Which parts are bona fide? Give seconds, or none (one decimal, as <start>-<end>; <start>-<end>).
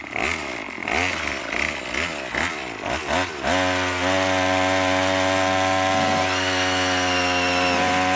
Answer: 0.0-8.2